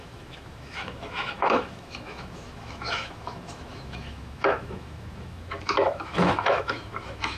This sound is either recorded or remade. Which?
remade